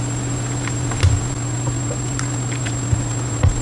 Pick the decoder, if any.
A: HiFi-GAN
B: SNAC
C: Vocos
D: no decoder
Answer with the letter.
D